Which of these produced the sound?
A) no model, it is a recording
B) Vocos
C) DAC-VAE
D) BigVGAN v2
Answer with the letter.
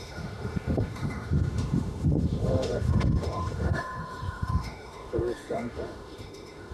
C